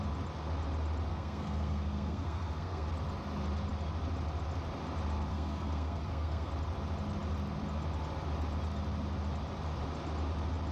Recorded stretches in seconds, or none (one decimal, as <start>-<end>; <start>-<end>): 0.0-1.1; 2.9-5.3; 6.5-10.7